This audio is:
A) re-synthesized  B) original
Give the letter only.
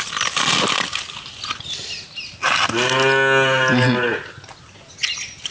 B